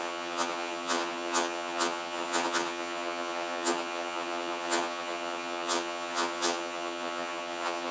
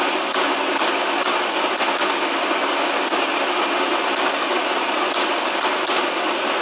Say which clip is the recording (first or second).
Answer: second